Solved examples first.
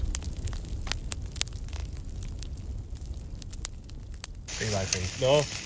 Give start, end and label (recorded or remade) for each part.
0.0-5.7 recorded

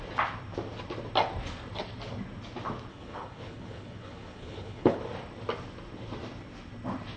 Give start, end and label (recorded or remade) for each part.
0.0-2.9 recorded; 2.9-5.0 remade; 5.0-7.2 recorded

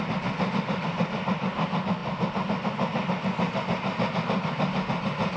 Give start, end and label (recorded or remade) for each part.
0.0-5.4 recorded